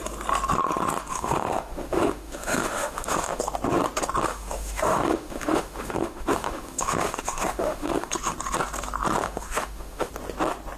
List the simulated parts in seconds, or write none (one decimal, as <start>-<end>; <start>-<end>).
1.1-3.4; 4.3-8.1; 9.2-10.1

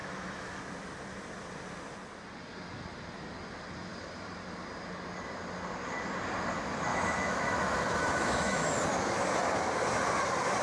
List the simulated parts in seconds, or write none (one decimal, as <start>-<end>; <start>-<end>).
0.0-0.6; 6.9-8.7

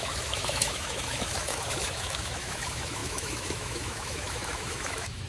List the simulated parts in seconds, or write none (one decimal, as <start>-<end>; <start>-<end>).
0.0-5.3